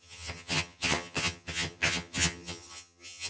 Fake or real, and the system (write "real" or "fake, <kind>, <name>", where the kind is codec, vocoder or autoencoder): fake, vocoder, HiFi-GAN